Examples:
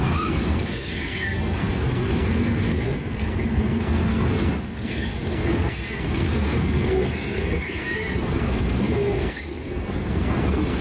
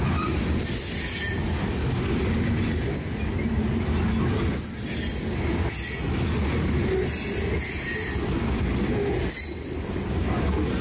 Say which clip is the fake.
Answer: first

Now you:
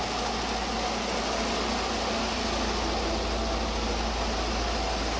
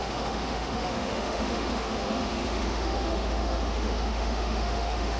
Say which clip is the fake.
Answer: second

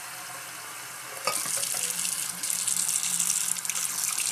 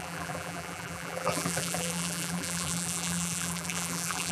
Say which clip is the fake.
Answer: second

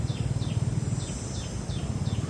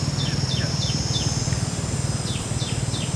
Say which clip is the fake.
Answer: second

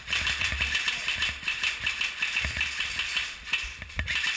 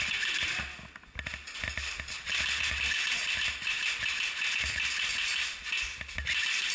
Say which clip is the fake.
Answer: first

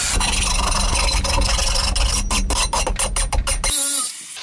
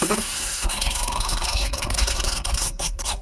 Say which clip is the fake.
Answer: second